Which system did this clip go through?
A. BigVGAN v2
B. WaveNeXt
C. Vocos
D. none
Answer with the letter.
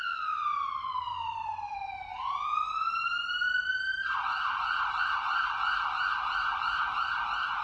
A